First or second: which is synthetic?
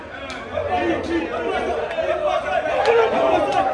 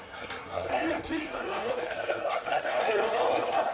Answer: second